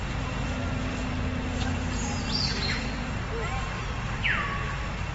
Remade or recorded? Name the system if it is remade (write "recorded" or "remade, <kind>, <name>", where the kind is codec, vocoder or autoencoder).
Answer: recorded